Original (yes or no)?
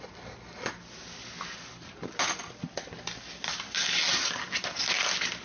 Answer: yes